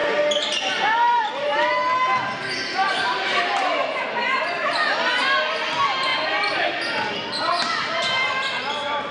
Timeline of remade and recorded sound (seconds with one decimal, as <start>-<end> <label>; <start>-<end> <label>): 0.0-1.7 remade; 1.7-2.9 recorded; 2.9-3.6 remade; 3.6-9.1 recorded